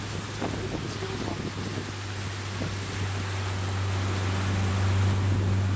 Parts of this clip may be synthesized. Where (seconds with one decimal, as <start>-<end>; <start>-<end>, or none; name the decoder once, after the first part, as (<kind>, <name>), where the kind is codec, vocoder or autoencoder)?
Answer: none